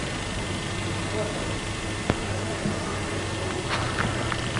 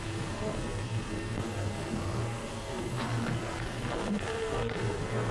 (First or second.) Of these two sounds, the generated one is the second